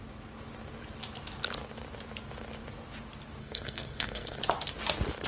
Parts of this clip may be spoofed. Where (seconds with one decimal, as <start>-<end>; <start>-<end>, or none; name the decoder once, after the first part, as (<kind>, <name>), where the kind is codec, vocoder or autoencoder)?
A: 3.4-4.4 (codec, SNAC)